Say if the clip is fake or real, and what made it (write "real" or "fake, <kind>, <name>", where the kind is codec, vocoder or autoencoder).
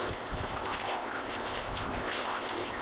fake, codec, ZipCodec